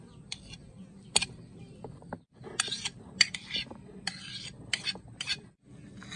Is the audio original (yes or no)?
yes